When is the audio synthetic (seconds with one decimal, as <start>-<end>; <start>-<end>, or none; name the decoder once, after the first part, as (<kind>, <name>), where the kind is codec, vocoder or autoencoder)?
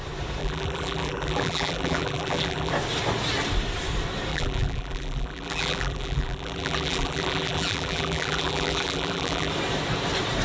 0.4-2.7 (vocoder, BigVGAN v2); 4.3-9.5